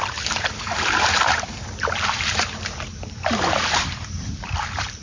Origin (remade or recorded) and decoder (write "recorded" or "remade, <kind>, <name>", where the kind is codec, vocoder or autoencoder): remade, vocoder, BigVGAN v2